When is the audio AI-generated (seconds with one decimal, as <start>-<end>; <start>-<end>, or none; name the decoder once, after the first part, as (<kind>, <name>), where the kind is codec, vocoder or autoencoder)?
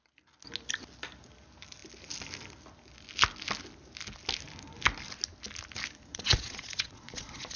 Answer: 6.1-7.6 (vocoder, Vocos)